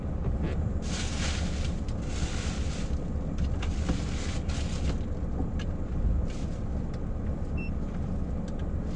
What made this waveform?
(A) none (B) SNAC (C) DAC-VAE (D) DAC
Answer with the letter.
A